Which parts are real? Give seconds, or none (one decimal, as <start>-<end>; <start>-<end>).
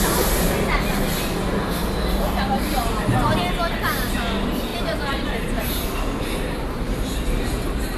0.0-8.0